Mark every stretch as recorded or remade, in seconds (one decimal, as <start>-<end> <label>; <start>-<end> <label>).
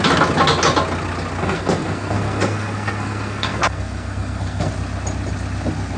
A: 0.0-1.4 recorded; 1.4-4.7 remade; 4.7-6.0 recorded